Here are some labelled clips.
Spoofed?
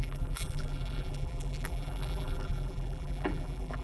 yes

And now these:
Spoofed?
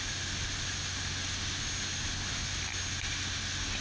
no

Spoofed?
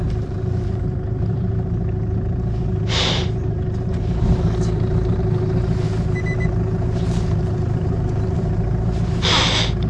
yes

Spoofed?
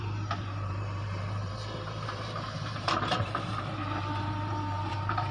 yes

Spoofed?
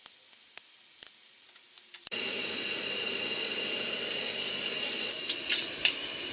no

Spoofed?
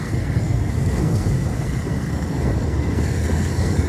yes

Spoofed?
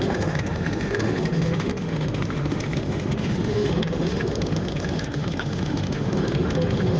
yes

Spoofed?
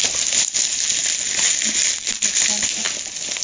no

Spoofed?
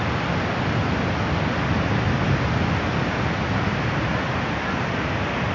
no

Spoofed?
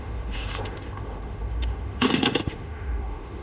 yes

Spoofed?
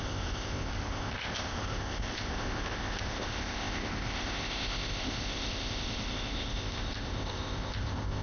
yes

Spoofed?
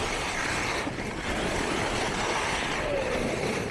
no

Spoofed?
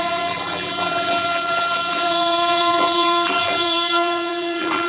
yes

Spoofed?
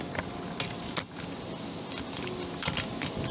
no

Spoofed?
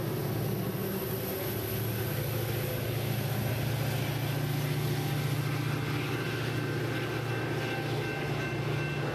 no